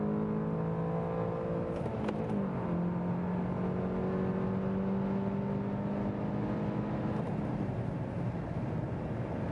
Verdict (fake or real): real